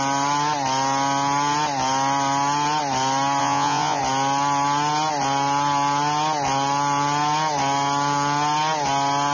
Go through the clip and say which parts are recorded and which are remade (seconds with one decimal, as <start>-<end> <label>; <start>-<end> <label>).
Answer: 0.0-3.4 recorded; 3.4-4.0 remade; 4.0-9.3 recorded